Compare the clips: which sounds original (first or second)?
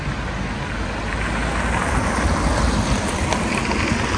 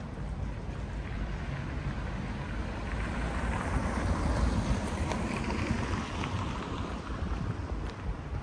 first